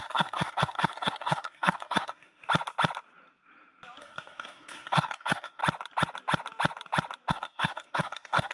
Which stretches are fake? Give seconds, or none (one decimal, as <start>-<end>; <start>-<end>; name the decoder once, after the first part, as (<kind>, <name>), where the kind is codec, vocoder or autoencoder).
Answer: 0.0-2.4 (codec, SNAC); 4.0-5.6; 7.3-8.5